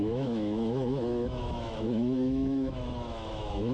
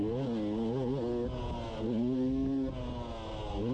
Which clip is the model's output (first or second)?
first